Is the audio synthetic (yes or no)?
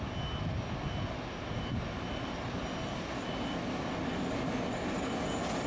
no